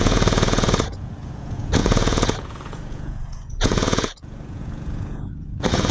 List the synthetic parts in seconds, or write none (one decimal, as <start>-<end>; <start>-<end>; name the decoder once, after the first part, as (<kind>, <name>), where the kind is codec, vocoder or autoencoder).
0.0-5.9 (vocoder, Vocos)